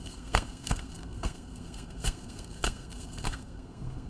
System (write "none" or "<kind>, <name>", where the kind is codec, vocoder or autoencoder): codec, SNAC